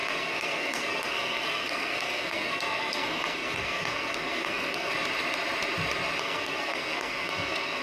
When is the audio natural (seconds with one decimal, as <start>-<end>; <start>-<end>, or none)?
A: 4.9-6.2